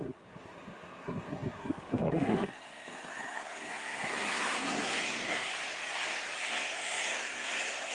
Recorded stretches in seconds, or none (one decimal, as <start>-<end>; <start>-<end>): 5.5-6.4